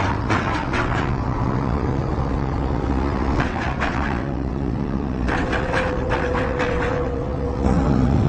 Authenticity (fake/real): fake